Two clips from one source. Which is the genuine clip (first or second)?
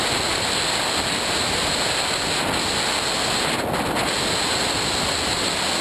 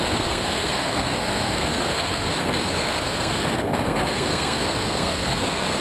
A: first